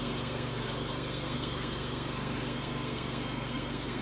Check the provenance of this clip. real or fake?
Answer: fake